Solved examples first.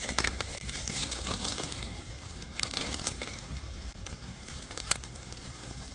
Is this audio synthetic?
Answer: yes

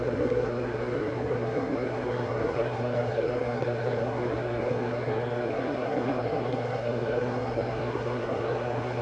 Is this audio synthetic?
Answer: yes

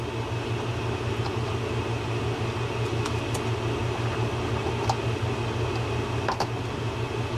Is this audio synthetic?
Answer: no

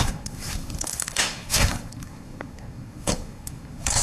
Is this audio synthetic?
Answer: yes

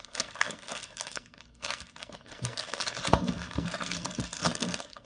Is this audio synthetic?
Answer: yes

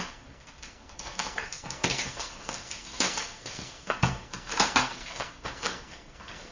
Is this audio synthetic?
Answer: yes